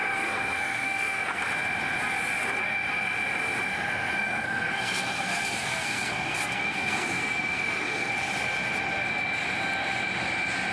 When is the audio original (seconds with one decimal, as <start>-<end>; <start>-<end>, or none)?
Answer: 1.4-3.7; 8.1-10.7